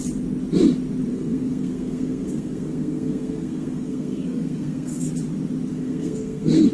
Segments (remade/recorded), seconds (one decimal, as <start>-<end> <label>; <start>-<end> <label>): 0.0-1.1 recorded; 1.1-5.1 remade; 5.1-5.7 recorded; 5.7-6.7 remade